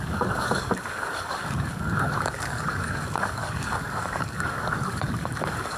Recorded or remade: remade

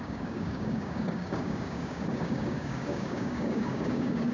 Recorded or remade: remade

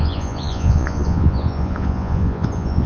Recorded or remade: remade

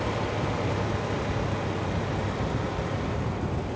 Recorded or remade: recorded